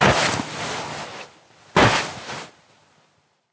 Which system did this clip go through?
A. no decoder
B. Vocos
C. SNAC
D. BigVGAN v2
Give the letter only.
A